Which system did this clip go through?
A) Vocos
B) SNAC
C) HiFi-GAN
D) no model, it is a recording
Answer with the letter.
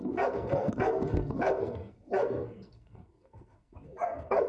B